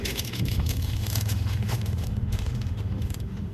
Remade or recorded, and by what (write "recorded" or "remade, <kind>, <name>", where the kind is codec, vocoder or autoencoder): remade, autoencoder, DAC-VAE